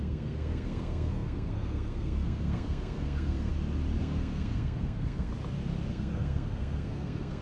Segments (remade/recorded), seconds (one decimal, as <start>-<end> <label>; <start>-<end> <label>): 0.0-3.5 remade; 3.5-4.0 recorded; 4.0-5.3 remade; 5.3-5.9 recorded; 5.9-7.4 remade